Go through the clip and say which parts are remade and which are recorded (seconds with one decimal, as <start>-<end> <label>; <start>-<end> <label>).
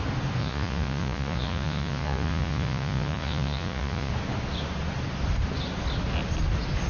0.0-0.4 recorded; 0.4-4.1 remade; 4.1-6.9 recorded